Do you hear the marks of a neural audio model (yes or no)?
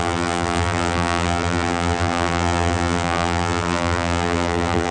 yes